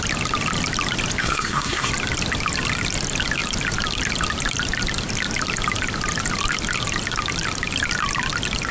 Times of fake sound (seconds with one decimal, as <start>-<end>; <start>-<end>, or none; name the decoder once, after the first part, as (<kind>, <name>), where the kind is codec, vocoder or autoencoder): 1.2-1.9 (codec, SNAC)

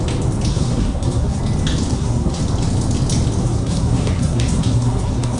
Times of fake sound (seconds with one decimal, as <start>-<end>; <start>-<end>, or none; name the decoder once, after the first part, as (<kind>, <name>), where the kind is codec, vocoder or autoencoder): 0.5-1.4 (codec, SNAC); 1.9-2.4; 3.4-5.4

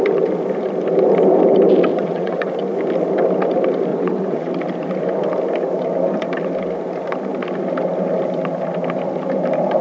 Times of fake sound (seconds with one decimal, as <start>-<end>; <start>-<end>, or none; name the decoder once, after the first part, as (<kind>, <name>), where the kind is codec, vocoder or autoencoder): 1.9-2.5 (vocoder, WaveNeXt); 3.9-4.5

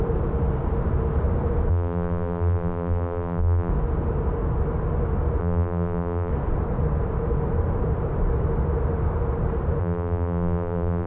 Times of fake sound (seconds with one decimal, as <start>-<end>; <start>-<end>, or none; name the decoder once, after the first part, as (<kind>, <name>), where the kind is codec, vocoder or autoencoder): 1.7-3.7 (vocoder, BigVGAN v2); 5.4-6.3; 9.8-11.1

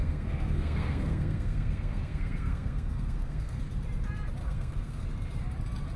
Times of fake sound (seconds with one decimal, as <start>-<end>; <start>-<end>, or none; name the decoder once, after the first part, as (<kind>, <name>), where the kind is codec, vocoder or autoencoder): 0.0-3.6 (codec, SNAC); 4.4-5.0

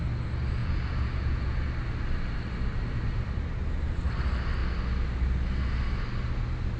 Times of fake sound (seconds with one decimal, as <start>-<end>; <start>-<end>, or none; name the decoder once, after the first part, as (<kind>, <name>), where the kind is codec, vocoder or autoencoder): 0.6-1.7 (vocoder, Vocos)

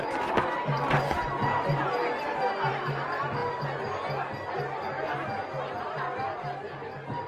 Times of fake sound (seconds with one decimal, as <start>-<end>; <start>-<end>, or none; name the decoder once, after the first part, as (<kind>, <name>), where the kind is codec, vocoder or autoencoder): 0.0-2.0 (vocoder, BigVGAN v2); 2.7-3.4; 5.8-7.3